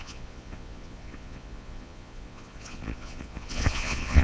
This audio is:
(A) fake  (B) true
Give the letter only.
A